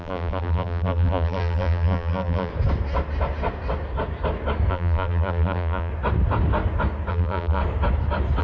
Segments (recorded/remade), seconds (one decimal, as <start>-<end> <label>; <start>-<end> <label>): 0.0-2.5 remade; 2.5-4.7 recorded; 4.7-5.9 remade; 5.9-7.1 recorded; 7.1-7.6 remade; 7.6-8.4 recorded

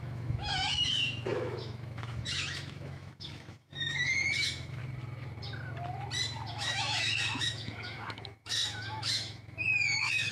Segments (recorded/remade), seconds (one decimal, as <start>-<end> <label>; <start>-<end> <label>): 0.0-4.8 remade; 4.8-6.5 recorded; 6.5-10.3 remade

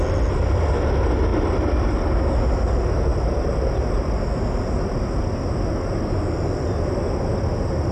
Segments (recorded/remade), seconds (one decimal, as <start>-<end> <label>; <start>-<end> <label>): 0.0-7.9 recorded

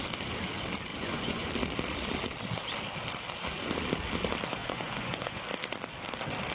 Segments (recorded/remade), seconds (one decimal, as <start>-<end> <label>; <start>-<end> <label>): 0.0-0.9 recorded; 0.9-1.5 remade; 1.5-4.6 recorded; 4.6-5.4 remade; 5.4-6.5 recorded

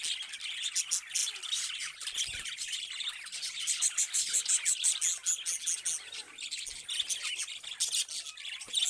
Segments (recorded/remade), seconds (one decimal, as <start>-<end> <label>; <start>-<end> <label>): 0.0-1.2 recorded; 1.2-4.4 remade; 4.4-8.9 recorded

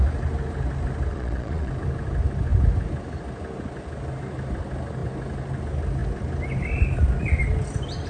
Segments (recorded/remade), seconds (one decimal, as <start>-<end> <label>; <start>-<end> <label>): 0.0-1.1 recorded; 1.1-1.7 remade; 1.7-8.1 recorded

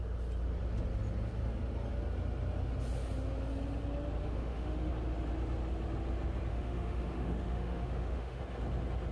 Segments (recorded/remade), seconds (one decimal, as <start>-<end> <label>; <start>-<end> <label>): 0.0-4.2 recorded; 4.2-4.9 remade; 4.9-6.5 recorded; 6.5-8.4 remade; 8.4-9.1 recorded